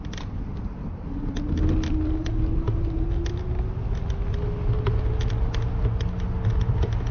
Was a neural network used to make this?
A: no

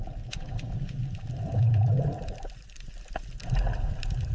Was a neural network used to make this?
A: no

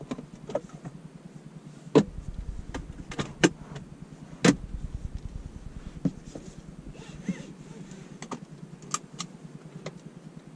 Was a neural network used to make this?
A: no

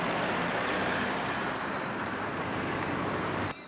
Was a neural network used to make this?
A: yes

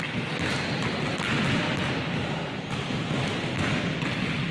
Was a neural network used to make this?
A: no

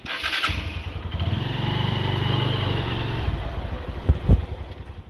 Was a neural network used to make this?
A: no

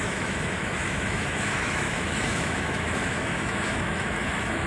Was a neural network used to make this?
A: yes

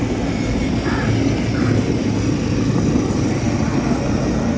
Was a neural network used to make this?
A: no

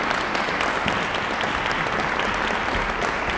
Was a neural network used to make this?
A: no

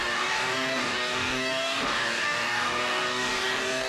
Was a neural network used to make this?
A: yes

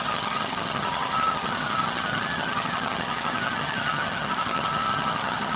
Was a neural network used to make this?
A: yes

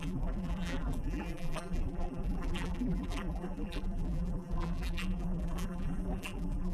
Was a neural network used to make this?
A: yes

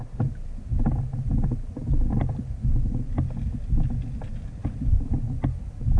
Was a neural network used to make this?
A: no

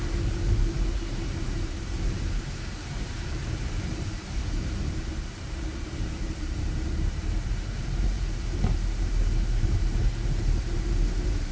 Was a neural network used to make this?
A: yes